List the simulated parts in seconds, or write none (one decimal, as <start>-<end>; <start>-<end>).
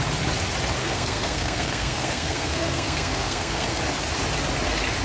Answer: 0.8-3.8